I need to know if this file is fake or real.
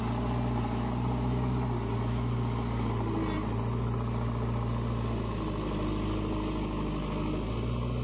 real